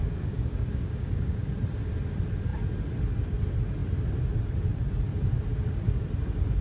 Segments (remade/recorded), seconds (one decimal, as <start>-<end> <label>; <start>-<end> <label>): 0.0-1.4 remade; 1.4-6.6 recorded